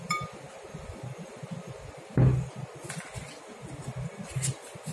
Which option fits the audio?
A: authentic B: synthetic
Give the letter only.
A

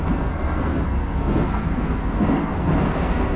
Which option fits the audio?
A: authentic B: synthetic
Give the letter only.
B